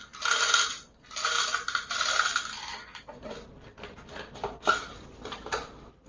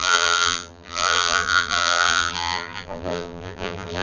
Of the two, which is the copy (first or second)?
second